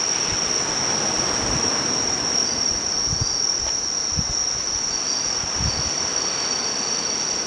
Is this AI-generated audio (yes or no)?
no